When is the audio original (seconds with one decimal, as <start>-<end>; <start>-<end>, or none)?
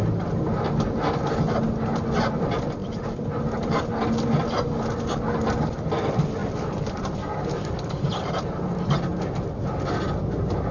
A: 0.0-2.8; 3.8-6.4; 7.0-10.7